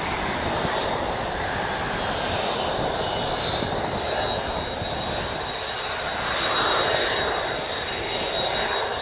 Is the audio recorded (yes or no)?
yes